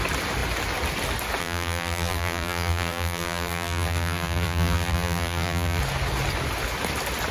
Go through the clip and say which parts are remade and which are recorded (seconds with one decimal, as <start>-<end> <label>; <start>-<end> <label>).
0.0-1.4 recorded; 1.4-5.8 remade; 5.8-7.3 recorded